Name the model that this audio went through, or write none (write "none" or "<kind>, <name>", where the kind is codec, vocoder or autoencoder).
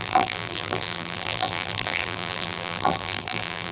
vocoder, BigVGAN v2